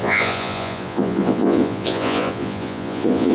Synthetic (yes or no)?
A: yes